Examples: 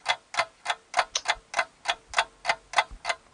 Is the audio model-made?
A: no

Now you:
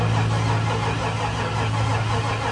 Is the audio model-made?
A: no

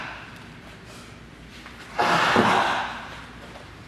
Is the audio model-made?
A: no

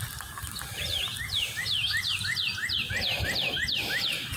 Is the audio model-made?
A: no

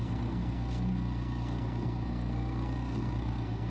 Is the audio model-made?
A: yes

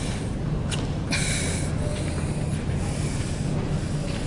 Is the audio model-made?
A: no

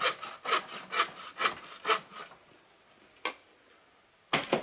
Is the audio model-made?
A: no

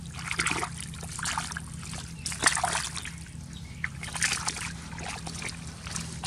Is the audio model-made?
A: no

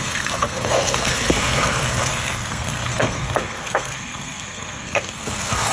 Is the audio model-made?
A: yes